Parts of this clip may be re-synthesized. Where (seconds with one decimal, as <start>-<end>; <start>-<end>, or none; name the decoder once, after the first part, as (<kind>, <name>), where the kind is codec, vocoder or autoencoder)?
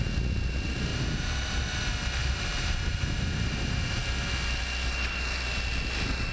0.9-1.6 (vocoder, BigVGAN v2); 2.2-4.0